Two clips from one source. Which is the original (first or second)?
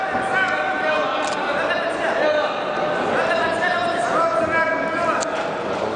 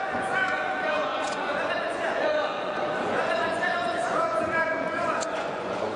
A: first